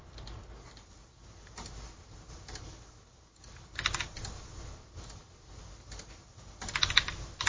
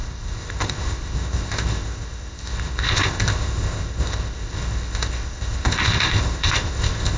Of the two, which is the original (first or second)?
first